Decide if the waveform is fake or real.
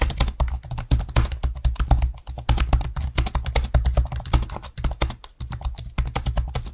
real